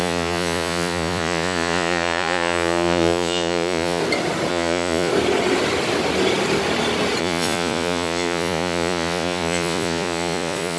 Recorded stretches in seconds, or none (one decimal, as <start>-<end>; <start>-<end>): 4.0-4.5; 5.1-7.2